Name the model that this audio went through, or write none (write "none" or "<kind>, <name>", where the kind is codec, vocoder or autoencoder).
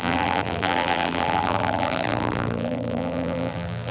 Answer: vocoder, BigVGAN v2